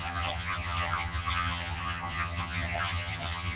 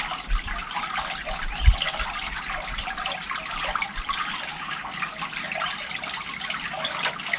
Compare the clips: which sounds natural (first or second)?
second